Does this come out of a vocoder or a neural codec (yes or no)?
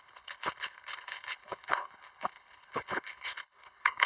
yes